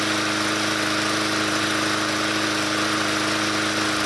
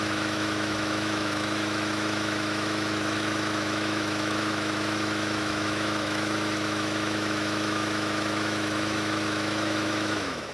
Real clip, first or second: first